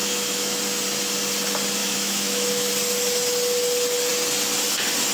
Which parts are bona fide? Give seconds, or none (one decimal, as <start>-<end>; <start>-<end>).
0.6-1.8; 2.7-5.1